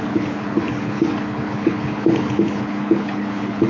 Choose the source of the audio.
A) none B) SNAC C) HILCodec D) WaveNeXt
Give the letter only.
C